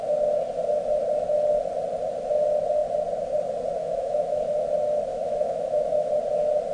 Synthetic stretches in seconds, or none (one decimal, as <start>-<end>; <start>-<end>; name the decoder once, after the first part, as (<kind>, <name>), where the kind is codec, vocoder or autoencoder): 3.8-4.5 (autoencoder, DAC-VAE); 5.1-6.1